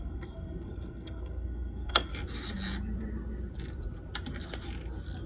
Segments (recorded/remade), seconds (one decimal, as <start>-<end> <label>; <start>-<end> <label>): 0.0-2.1 remade; 2.1-5.3 recorded

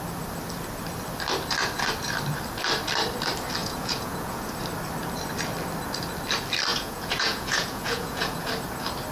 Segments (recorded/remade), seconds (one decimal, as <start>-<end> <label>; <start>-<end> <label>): 0.0-3.6 recorded; 3.6-4.5 remade; 4.5-6.7 recorded; 6.7-8.5 remade; 8.5-9.1 recorded